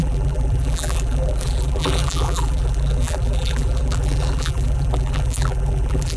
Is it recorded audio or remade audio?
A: remade